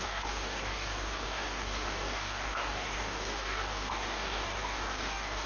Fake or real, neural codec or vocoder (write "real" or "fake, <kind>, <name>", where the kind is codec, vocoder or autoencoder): fake, codec, DAC